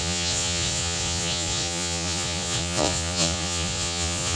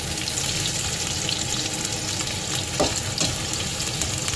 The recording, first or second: second